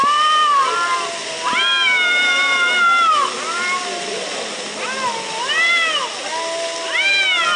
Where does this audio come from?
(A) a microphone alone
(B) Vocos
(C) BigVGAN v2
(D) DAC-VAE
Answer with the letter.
A